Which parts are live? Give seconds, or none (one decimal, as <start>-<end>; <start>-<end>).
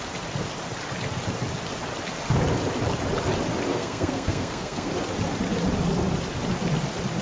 0.0-3.7; 4.9-7.2